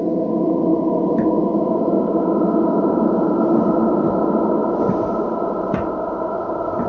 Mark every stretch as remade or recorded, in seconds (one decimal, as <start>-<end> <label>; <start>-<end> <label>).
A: 0.0-6.9 recorded

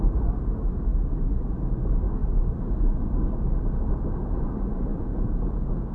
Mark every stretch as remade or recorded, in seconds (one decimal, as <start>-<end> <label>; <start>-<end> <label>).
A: 0.0-4.9 recorded; 4.9-5.9 remade

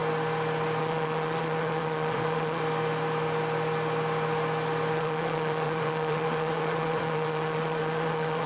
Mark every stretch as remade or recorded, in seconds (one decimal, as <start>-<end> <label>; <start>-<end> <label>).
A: 0.0-0.8 recorded; 0.8-2.6 remade; 2.6-4.9 recorded; 4.9-8.5 remade